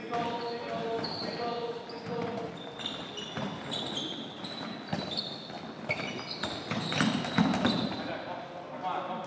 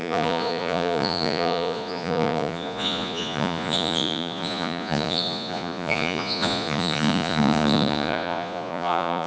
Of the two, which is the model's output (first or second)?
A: second